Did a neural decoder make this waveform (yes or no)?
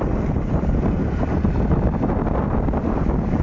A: no